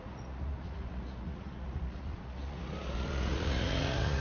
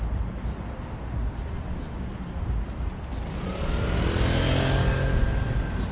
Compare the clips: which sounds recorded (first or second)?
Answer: second